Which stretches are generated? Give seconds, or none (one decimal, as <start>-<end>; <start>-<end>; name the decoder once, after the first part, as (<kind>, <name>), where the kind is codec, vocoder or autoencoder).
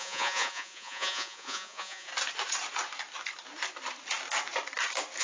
0.0-2.1 (vocoder, Vocos)